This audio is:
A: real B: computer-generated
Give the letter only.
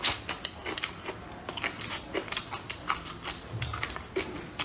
A